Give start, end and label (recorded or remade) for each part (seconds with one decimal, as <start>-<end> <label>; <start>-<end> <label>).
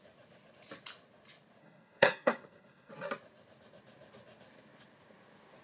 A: 0.0-1.6 recorded; 1.6-2.9 remade; 2.9-5.6 recorded